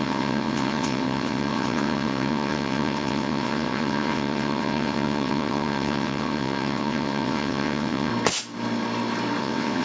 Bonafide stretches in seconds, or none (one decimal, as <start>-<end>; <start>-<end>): 8.1-9.4